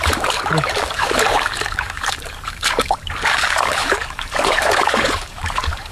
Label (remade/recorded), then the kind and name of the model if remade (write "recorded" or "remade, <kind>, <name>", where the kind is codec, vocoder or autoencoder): remade, codec, DAC